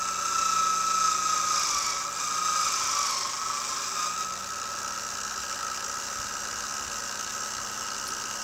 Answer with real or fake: real